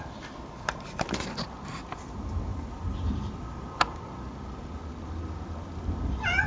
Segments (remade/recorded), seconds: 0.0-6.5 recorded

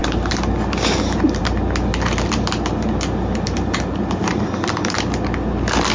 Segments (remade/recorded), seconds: 0.0-0.5 remade; 0.5-5.9 recorded

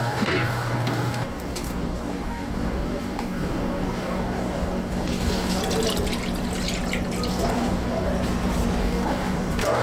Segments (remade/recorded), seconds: 0.0-5.6 remade; 5.6-7.3 recorded; 7.3-8.1 remade; 8.1-8.8 recorded; 8.8-9.8 remade

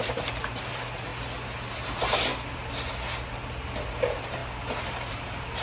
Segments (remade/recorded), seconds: 0.0-1.1 remade; 1.1-1.7 recorded; 1.7-2.3 remade; 2.3-3.9 recorded; 3.9-4.4 remade; 4.4-5.1 recorded; 5.1-5.6 remade